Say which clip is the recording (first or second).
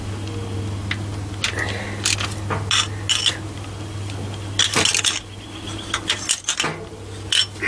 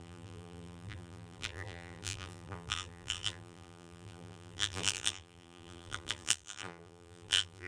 first